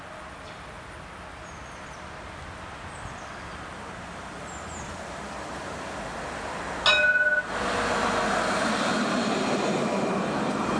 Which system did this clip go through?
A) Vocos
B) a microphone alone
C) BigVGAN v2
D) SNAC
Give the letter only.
B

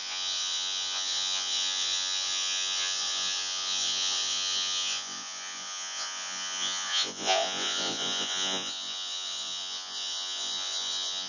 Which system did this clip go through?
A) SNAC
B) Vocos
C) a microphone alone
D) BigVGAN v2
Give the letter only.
B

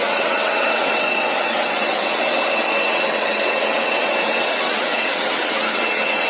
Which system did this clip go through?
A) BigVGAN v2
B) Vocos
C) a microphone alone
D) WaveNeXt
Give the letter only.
D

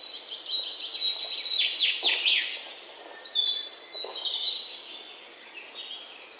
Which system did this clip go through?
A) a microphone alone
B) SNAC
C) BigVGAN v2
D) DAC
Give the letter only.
A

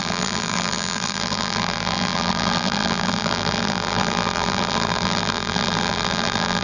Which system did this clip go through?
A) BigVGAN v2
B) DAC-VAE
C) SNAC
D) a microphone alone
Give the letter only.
A